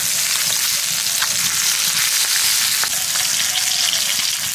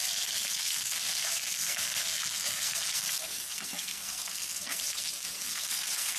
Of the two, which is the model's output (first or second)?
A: second